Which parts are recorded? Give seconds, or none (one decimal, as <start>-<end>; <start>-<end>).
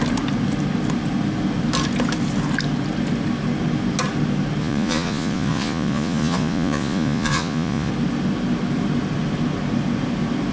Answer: 0.0-4.6; 7.9-10.5